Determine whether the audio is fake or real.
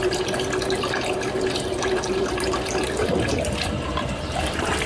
fake